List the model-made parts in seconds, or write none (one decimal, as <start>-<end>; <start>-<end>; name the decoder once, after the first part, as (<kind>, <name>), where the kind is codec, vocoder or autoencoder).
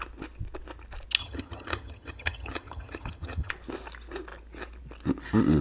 1.2-3.5 (vocoder, HiFi-GAN)